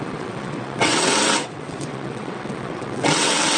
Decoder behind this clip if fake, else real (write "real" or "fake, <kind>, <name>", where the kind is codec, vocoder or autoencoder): fake, vocoder, WaveNeXt